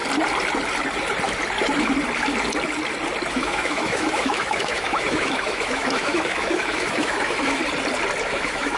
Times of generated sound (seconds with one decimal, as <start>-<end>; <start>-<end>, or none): 3.3-7.6; 8.2-8.8